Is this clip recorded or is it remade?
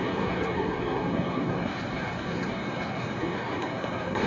remade